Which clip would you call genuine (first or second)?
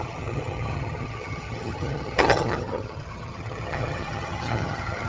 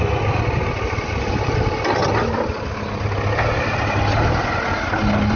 second